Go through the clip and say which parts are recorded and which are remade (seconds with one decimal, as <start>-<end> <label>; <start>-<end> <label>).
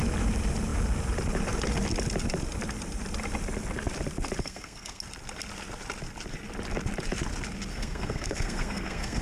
0.0-4.4 recorded; 4.4-5.0 remade; 5.0-7.7 recorded; 7.7-9.2 remade